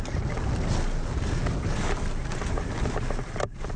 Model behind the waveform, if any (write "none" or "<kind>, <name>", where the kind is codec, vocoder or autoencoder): none